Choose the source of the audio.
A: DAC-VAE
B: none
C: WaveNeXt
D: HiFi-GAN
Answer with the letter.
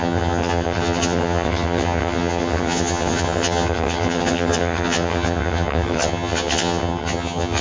D